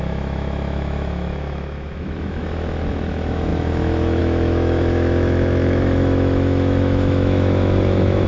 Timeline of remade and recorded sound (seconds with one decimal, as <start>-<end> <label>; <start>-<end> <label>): 0.0-8.3 remade